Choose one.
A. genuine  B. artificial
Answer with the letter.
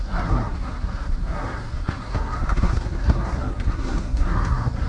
B